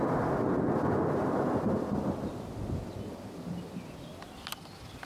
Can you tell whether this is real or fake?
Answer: real